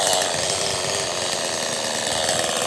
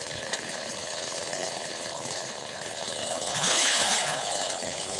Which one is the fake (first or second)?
second